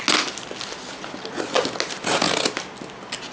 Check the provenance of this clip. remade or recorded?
recorded